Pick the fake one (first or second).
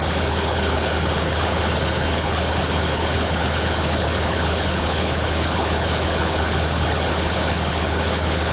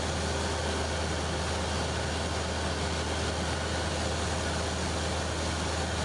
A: first